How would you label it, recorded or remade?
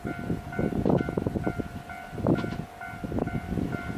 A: recorded